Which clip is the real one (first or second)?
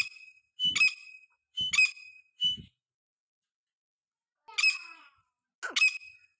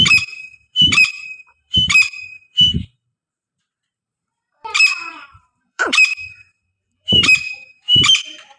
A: first